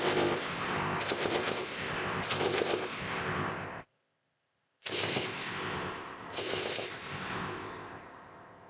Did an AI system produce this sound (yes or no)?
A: yes